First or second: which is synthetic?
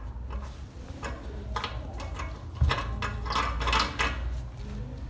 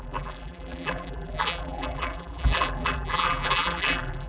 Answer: second